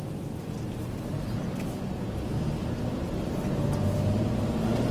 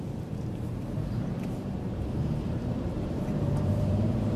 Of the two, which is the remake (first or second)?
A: second